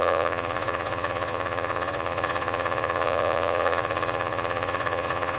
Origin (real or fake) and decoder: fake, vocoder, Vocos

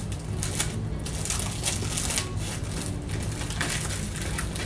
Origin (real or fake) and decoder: real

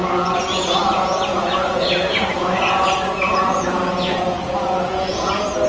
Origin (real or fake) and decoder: fake, vocoder, Vocos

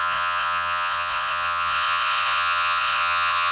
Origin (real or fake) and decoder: fake, vocoder, Vocos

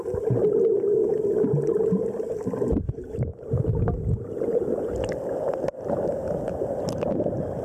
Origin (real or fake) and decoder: real